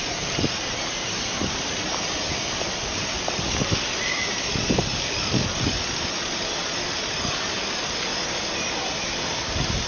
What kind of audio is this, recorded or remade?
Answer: recorded